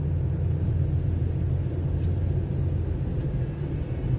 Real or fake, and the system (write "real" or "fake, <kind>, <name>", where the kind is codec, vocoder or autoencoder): real